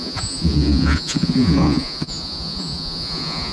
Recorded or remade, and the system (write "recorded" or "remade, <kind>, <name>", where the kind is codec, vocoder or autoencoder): remade, vocoder, Vocos